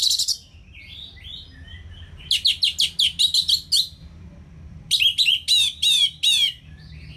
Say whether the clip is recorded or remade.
recorded